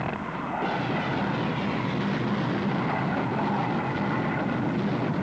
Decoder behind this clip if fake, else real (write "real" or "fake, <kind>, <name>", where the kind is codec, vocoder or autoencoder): real